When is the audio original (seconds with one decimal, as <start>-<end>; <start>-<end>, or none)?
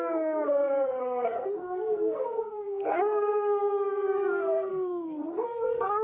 none